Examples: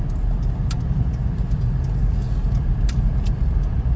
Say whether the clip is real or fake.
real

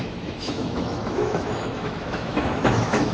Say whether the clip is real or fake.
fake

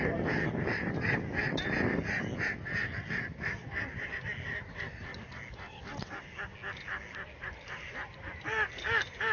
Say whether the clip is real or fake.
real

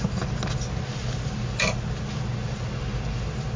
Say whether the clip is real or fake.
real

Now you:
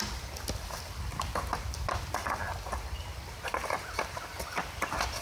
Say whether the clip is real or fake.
real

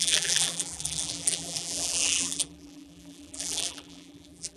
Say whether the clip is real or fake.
fake